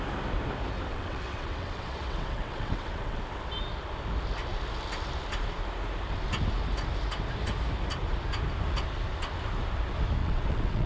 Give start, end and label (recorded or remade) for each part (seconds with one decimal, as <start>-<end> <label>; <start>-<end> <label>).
0.0-0.9 recorded; 0.9-3.2 remade; 3.2-10.2 recorded; 10.2-10.9 remade